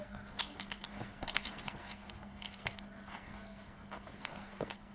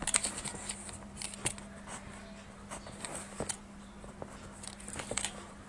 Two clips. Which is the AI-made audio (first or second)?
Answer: first